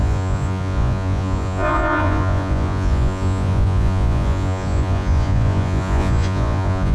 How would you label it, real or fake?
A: fake